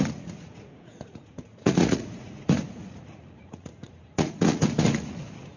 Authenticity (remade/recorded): remade